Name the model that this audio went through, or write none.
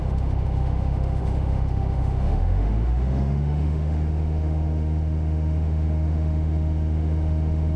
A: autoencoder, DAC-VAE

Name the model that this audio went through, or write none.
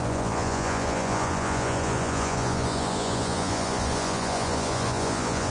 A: vocoder, Vocos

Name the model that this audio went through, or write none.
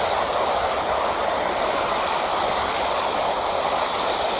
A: vocoder, BigVGAN v2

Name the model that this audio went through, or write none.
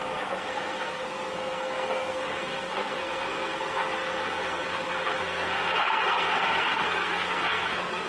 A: codec, SNAC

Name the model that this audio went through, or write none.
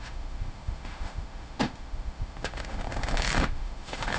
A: autoencoder, DAC-VAE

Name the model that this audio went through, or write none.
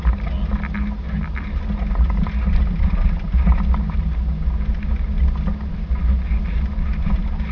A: none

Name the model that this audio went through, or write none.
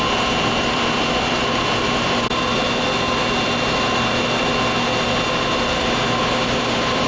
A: none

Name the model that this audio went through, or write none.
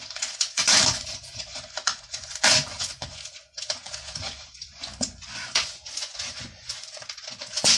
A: vocoder, Vocos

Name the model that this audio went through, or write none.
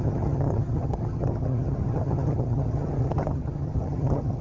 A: vocoder, HiFi-GAN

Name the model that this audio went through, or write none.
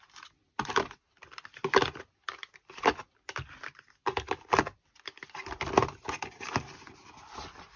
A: none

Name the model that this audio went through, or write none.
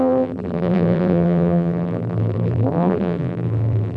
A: vocoder, BigVGAN v2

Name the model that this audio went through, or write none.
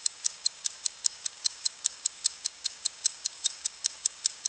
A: codec, DAC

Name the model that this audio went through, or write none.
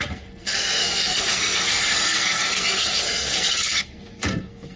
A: codec, SNAC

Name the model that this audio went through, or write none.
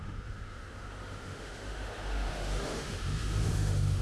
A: autoencoder, DAC-VAE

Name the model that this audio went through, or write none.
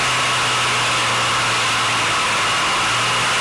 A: none